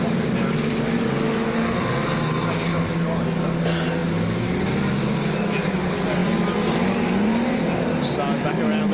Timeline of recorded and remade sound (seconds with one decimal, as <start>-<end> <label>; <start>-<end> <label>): 0.0-8.9 recorded